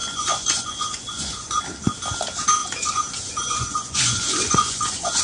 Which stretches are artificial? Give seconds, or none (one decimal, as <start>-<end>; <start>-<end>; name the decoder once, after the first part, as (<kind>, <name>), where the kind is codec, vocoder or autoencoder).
0.0-1.6 (vocoder, Vocos); 2.6-5.2